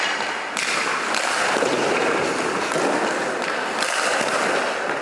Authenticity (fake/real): real